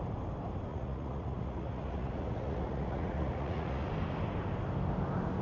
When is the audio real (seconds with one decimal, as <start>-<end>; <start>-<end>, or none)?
0.0-0.7; 3.9-5.4